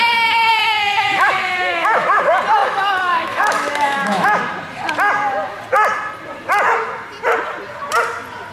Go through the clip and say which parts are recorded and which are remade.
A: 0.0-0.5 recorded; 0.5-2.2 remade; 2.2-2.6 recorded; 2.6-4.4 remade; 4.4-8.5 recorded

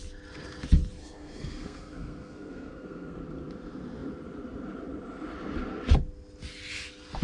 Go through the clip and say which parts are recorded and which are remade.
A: 0.0-1.0 recorded; 1.0-3.2 remade; 3.2-7.2 recorded

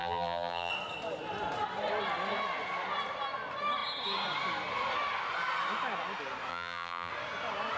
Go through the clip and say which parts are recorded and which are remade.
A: 0.0-0.7 remade; 0.7-6.5 recorded; 6.5-7.1 remade; 7.1-7.8 recorded

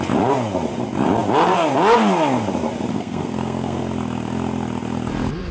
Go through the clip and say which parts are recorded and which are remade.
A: 0.0-2.9 recorded; 2.9-3.8 remade; 3.8-5.5 recorded

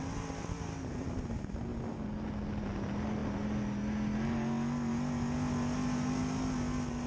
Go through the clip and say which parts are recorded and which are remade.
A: 0.0-7.1 recorded